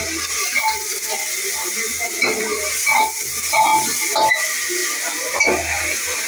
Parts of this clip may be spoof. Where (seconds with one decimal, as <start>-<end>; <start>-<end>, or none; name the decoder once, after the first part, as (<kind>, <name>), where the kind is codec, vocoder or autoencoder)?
none